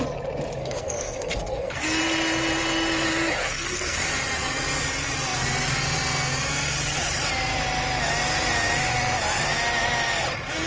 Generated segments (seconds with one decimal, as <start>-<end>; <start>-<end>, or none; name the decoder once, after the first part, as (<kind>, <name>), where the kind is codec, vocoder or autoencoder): 0.6-2.0 (codec, SNAC); 3.4-4.0